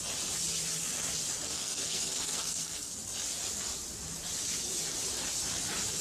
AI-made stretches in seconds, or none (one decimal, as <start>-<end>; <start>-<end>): 1.4-2.9